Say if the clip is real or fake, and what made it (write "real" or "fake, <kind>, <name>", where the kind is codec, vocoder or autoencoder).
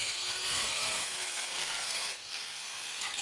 fake, codec, SNAC